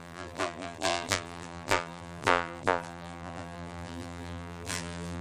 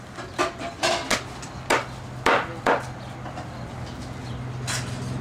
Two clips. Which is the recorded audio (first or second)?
second